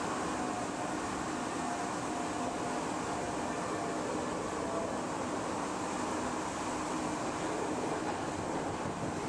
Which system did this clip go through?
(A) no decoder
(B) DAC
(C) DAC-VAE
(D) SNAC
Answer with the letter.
A